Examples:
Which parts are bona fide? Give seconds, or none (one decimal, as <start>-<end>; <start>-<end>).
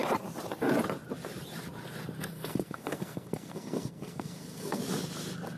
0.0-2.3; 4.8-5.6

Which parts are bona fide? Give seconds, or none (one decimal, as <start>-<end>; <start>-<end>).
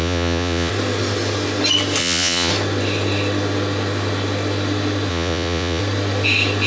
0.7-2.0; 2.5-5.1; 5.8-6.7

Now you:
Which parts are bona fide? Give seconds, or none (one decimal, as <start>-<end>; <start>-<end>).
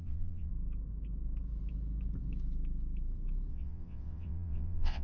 0.5-3.5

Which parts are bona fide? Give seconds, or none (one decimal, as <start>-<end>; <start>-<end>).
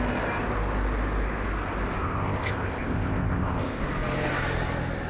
0.0-2.0; 3.8-5.1